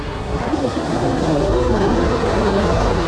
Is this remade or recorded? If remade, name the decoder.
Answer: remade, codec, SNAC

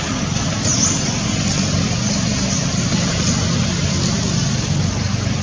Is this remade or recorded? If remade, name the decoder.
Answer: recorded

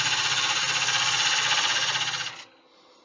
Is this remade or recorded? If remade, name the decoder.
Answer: recorded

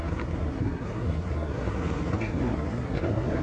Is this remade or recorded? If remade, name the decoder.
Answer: remade, codec, SNAC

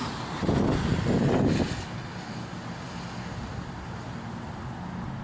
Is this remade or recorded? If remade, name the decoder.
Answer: recorded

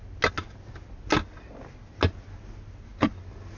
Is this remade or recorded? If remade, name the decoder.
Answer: recorded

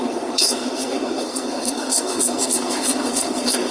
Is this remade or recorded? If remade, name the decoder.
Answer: remade, codec, SNAC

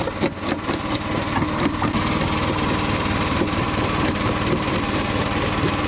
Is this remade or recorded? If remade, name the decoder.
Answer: recorded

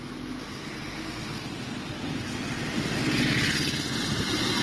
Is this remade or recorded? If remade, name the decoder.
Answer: recorded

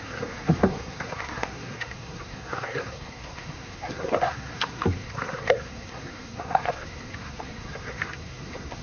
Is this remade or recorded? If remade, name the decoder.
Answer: remade, codec, SNAC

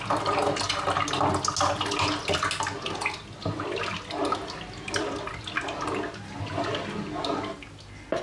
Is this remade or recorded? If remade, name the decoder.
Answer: recorded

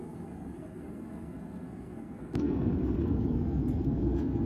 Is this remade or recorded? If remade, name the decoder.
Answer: remade, codec, SNAC